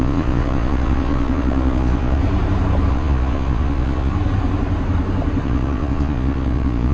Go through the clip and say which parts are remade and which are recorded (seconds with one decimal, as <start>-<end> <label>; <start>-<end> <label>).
0.0-2.2 remade; 2.2-2.9 recorded; 2.9-4.1 remade; 4.1-5.4 recorded; 5.4-6.9 remade